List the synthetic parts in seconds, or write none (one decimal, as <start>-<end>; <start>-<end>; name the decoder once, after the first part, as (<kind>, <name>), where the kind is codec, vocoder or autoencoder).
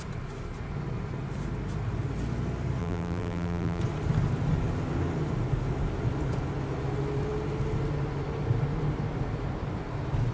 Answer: 2.8-3.8 (vocoder, BigVGAN v2)